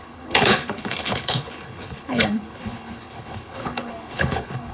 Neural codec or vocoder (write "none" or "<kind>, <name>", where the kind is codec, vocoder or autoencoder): codec, HILCodec